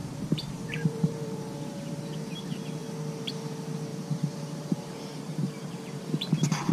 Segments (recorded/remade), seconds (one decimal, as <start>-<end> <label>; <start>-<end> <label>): 0.0-2.0 remade; 2.0-3.9 recorded; 3.9-6.3 remade; 6.3-6.7 recorded